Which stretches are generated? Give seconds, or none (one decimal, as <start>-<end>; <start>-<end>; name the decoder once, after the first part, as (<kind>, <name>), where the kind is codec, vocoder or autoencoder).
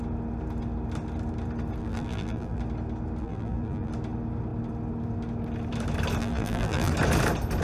1.8-2.6 (vocoder, BigVGAN v2); 3.2-3.9; 6.2-6.9